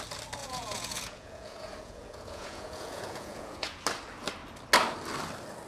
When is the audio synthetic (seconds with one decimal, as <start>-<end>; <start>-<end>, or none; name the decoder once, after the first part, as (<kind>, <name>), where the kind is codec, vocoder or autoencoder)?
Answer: 0.4-3.8 (vocoder, Vocos)